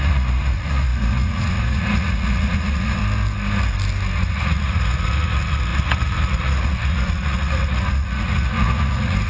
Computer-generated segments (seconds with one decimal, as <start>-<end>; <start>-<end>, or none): 0.0-3.0; 4.3-9.3

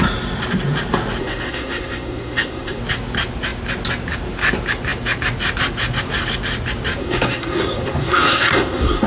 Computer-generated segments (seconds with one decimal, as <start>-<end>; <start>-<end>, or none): 1.2-2.8; 7.0-9.1